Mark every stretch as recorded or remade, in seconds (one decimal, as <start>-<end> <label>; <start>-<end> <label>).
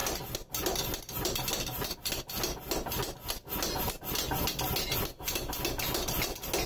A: 0.0-6.7 recorded